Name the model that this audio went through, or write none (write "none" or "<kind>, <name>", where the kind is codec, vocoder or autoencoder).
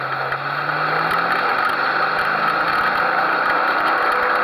none